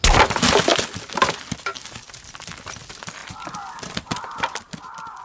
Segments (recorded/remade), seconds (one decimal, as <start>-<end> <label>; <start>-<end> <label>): 0.0-5.2 recorded